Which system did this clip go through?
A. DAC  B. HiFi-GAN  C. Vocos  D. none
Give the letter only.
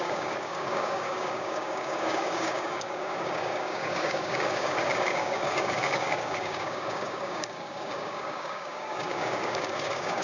A